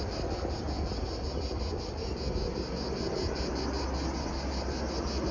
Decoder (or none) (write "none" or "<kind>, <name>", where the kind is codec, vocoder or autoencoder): none